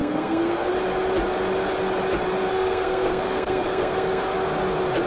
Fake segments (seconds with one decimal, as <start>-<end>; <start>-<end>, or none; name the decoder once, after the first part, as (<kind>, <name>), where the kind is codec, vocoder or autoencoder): 0.0-0.7 (codec, SNAC); 2.5-4.2